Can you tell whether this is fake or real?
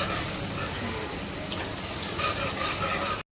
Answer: real